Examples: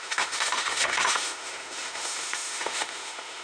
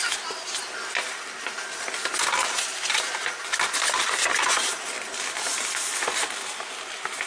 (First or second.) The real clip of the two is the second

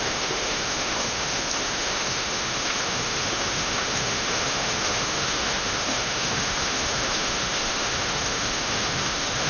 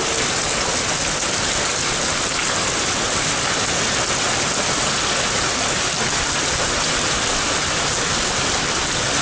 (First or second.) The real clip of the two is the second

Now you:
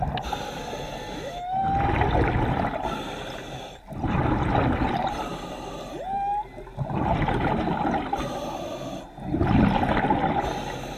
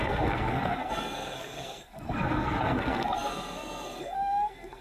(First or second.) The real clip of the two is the first